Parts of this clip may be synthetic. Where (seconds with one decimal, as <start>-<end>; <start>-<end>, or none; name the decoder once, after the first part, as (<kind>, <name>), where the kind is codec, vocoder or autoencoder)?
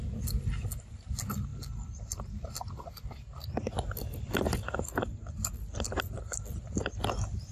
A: none